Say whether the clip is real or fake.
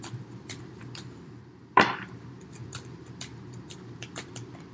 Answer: fake